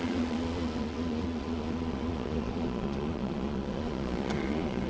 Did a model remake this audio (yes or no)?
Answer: yes